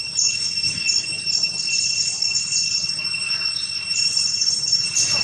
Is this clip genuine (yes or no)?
no